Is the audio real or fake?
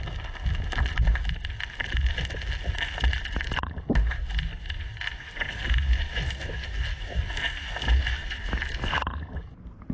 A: real